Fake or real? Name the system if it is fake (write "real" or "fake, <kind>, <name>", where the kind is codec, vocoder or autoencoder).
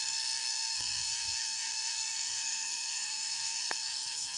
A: fake, codec, SNAC